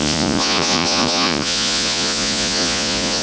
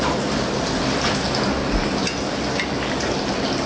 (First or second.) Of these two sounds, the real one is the second